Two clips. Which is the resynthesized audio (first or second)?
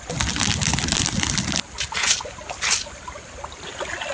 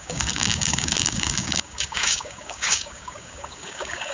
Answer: second